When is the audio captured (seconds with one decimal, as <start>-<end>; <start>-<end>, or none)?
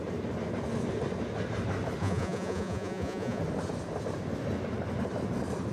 0.0-2.0; 3.4-5.7